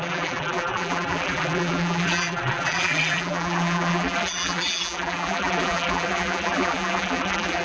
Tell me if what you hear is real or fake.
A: fake